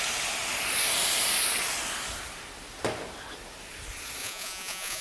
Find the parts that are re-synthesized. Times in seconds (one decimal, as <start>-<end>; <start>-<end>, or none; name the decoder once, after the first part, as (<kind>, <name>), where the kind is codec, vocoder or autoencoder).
4.2-5.0 (vocoder, Vocos)